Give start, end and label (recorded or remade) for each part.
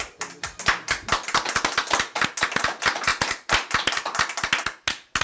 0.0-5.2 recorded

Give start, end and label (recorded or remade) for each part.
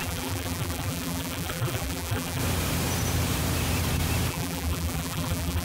0.0-2.4 remade; 2.4-4.3 recorded; 4.3-5.6 remade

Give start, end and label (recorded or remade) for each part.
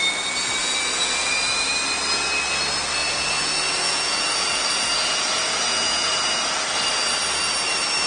0.0-0.6 recorded; 0.6-1.7 remade; 1.7-3.0 recorded; 3.0-6.5 remade; 6.5-8.1 recorded